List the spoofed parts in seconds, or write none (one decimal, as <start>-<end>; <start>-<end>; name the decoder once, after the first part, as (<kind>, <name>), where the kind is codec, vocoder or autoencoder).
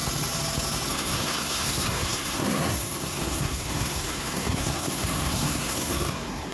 0.9-6.5 (codec, SNAC)